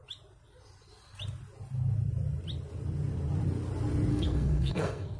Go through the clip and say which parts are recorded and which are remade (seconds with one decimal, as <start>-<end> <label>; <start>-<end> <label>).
0.0-4.1 recorded; 4.1-5.2 remade